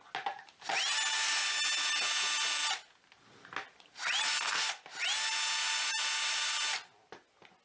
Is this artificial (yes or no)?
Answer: no